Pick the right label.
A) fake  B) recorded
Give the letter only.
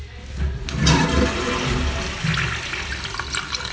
B